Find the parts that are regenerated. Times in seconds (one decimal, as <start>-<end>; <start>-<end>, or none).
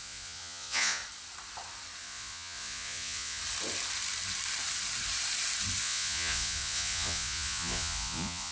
0.0-1.0; 2.0-3.4; 5.8-8.5